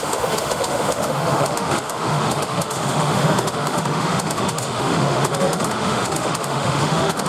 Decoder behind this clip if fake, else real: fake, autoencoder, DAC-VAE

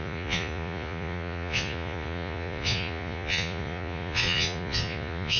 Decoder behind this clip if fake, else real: fake, vocoder, Vocos